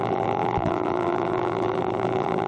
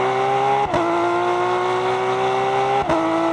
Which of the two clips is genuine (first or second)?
second